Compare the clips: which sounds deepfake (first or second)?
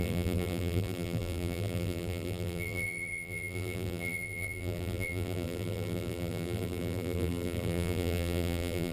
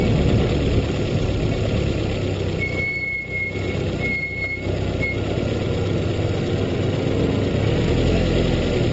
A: first